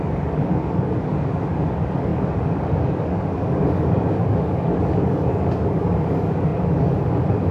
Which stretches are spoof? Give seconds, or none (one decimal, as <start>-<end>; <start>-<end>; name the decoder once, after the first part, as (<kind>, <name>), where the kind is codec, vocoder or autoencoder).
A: 0.0-7.5 (codec, DAC)